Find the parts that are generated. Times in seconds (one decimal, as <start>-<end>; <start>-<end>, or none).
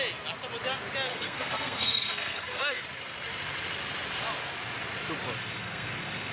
1.1-2.8; 5.4-6.3